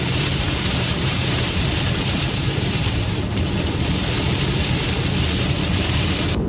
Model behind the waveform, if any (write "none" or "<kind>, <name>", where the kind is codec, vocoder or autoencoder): vocoder, BigVGAN v2